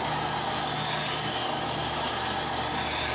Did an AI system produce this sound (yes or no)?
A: no